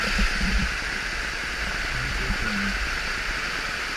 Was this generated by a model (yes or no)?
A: no